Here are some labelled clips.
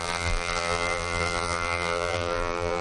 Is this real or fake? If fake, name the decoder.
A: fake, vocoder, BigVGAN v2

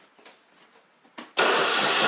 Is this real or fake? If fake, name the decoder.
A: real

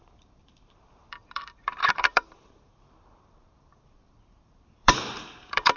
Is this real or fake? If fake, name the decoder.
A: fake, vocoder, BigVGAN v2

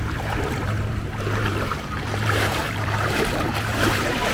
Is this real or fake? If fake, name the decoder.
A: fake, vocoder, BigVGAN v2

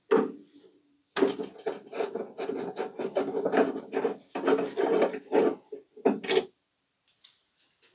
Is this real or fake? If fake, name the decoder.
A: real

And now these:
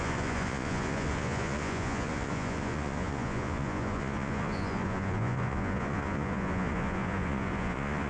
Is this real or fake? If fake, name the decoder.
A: fake, vocoder, Vocos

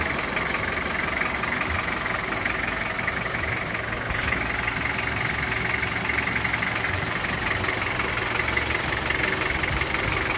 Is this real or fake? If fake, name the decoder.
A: real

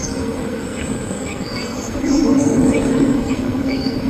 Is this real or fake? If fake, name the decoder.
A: fake, codec, SNAC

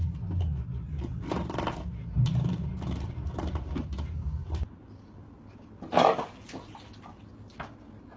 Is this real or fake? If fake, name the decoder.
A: real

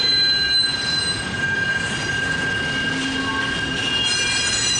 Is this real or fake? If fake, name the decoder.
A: real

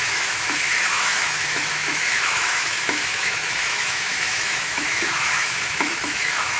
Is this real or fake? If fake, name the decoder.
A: fake, autoencoder, DAC-VAE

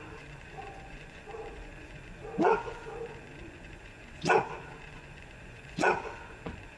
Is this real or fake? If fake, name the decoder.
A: fake, vocoder, Vocos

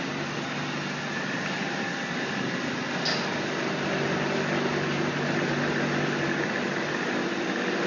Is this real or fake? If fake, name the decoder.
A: real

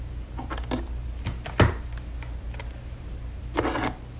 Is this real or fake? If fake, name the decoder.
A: real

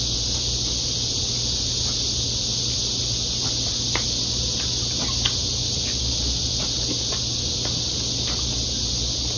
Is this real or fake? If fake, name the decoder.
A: real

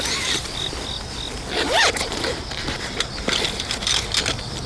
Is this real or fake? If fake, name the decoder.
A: real